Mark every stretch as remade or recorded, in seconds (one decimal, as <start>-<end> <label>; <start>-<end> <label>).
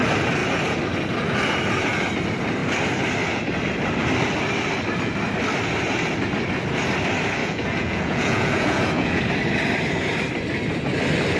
0.0-7.4 recorded; 7.4-9.2 remade; 9.2-11.4 recorded